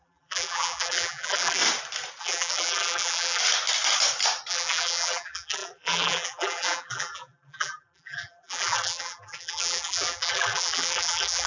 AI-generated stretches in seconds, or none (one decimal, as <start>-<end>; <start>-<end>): 0.0-1.6; 2.2-3.4; 4.5-11.5